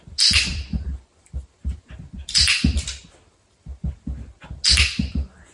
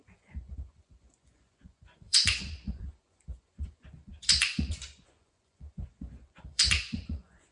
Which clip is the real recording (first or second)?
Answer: first